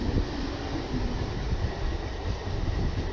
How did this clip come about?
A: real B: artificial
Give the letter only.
A